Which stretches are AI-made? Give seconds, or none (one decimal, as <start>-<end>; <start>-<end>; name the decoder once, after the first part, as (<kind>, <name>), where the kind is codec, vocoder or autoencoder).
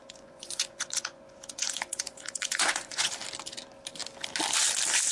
0.0-3.1 (vocoder, Vocos)